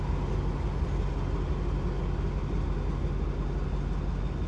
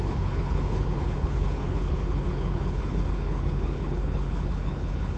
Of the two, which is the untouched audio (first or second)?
first